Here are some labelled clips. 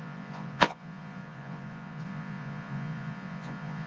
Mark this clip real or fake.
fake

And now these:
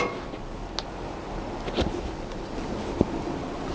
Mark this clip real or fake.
real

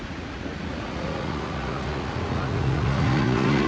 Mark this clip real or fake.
fake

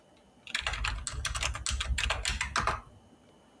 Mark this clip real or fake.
real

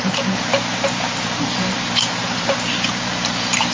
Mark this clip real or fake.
fake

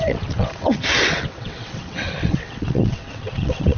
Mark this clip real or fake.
fake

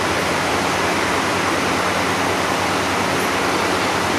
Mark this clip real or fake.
real